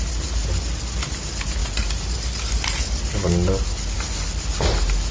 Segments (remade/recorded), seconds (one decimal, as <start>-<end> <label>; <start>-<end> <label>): 0.0-5.1 recorded